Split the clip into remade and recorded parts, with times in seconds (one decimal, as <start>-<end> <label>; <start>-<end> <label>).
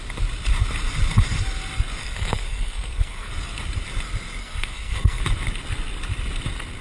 0.0-2.0 recorded; 2.0-3.3 remade; 3.3-4.4 recorded; 4.4-5.2 remade; 5.2-6.8 recorded